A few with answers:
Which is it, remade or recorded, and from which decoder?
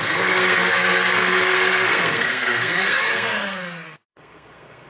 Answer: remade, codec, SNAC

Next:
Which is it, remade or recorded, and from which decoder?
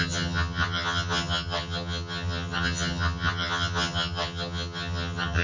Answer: remade, vocoder, HiFi-GAN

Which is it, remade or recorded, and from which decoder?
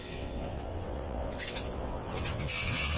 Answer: remade, vocoder, WaveNeXt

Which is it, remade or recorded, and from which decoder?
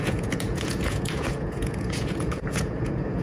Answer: remade, vocoder, Vocos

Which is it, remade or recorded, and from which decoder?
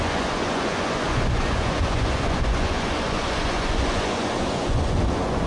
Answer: remade, vocoder, Vocos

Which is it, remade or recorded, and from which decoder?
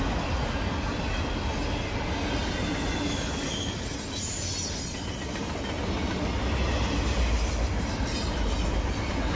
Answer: recorded